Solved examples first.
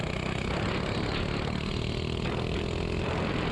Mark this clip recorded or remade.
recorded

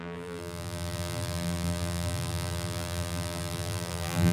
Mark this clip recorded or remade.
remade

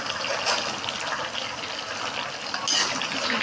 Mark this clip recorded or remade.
recorded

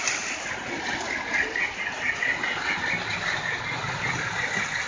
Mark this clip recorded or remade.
recorded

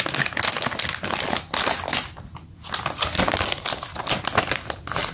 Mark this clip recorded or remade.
recorded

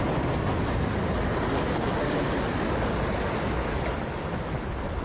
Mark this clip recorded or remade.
recorded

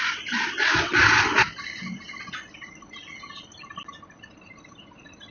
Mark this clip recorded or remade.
recorded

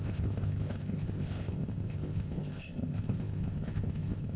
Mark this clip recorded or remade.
remade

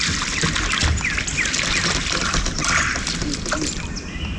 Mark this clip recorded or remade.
recorded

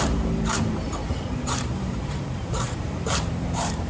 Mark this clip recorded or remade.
remade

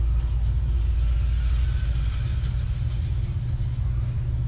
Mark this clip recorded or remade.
recorded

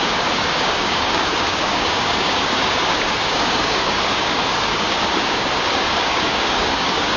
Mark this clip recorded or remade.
remade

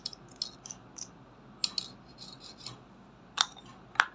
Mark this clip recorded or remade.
recorded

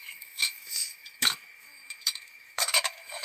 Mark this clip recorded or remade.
remade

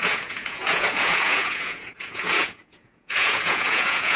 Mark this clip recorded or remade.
remade